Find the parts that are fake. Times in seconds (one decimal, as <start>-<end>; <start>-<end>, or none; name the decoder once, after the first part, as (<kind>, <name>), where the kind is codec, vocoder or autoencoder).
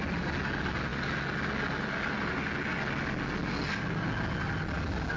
none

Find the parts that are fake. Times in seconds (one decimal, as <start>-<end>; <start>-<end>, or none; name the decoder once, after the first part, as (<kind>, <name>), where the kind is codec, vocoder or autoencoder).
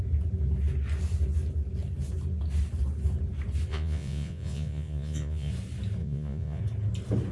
3.7-5.5 (vocoder, Vocos); 6.0-6.6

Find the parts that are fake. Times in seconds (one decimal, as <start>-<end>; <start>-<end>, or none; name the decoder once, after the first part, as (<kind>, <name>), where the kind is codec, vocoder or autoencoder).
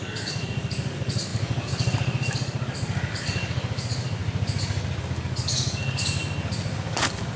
0.0-4.2 (codec, DAC); 5.0-6.2; 6.7-7.4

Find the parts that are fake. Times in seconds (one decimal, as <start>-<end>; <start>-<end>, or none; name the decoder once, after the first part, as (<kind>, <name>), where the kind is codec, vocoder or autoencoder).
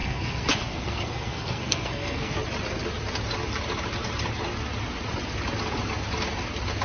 0.0-2.3 (codec, SNAC)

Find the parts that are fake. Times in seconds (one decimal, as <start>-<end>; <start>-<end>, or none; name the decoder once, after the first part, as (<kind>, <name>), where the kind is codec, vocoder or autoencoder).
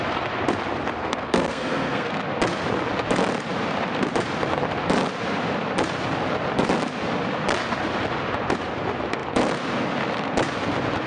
1.0-2.1 (codec, SNAC)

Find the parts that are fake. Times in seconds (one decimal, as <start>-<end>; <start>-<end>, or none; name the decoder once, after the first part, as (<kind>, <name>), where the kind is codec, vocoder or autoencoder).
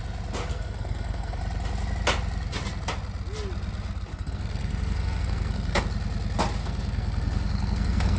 0.5-1.4 (codec, SNAC); 4.1-5.8; 6.6-8.2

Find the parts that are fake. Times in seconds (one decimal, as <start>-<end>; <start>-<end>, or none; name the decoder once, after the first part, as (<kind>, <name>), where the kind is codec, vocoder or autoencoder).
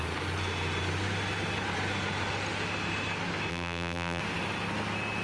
3.5-4.2 (vocoder, BigVGAN v2)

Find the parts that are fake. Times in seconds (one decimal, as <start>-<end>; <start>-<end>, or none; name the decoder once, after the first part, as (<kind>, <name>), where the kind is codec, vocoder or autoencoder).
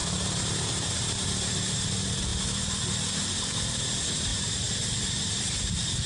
0.0-1.3 (vocoder, BigVGAN v2); 4.3-6.1